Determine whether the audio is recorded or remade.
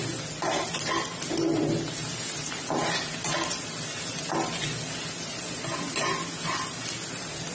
recorded